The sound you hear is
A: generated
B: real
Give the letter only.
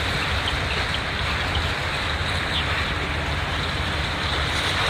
B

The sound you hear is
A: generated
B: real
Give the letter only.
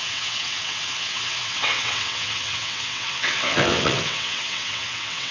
A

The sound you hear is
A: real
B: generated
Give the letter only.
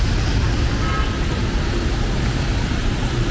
A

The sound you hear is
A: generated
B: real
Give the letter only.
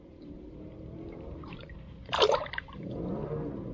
A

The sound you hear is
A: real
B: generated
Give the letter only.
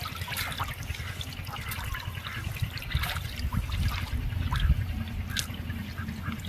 A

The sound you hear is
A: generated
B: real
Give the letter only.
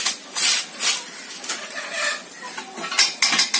A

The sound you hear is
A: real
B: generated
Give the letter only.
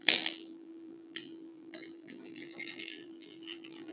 B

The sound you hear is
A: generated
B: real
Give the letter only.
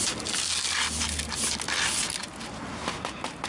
B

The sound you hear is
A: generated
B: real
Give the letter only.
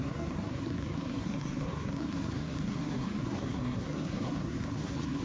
A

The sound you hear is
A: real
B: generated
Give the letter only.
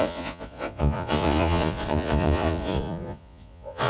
B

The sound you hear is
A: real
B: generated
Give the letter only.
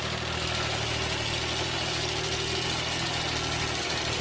A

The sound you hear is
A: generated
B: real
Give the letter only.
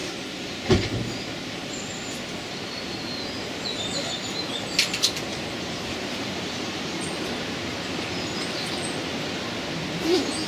B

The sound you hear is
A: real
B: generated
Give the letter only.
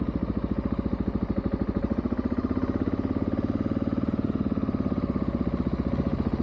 A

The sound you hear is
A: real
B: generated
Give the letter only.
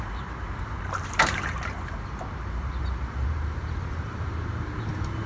B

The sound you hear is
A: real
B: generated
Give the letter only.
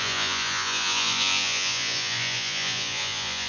B